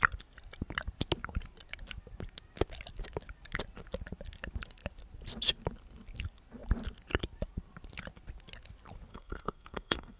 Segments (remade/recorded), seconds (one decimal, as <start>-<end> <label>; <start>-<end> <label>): 0.0-9.1 recorded; 9.1-10.2 remade